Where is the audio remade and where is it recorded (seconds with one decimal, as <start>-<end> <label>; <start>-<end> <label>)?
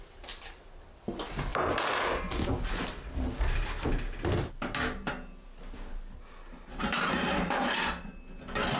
0.0-8.8 recorded